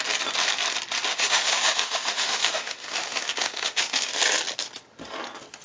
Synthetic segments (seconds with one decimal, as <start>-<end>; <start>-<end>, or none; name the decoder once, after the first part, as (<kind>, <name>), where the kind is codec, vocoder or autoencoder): 1.1-4.1 (autoencoder, DAC-VAE)